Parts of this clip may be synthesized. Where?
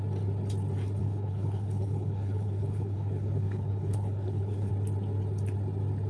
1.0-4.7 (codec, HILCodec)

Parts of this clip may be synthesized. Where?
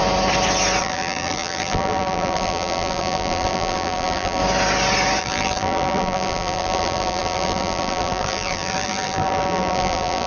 0.8-4.4 (vocoder, BigVGAN v2); 5.2-10.3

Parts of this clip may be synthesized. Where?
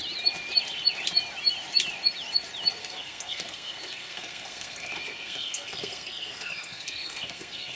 2.8-7.8 (codec, SNAC)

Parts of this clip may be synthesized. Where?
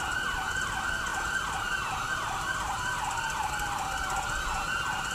1.1-3.5 (vocoder, BigVGAN v2)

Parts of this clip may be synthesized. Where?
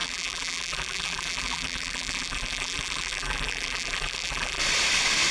0.0-4.6 (vocoder, BigVGAN v2)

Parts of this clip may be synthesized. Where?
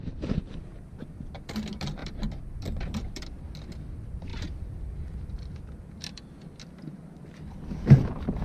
2.0-3.1 (vocoder, BigVGAN v2); 4.3-5.3